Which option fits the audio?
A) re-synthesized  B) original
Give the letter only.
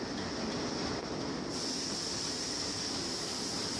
B